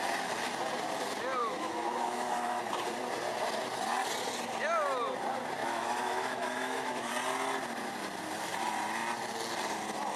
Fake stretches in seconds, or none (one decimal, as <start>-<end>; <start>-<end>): 1.4-2.6; 5.6-7.1